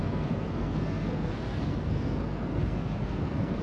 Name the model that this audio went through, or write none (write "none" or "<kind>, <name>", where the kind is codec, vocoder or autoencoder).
codec, SNAC